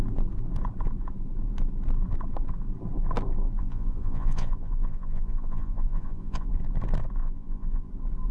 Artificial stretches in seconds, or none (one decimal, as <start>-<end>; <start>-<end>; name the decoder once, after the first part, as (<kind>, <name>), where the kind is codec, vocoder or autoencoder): 3.6-6.5 (vocoder, Vocos); 7.2-7.9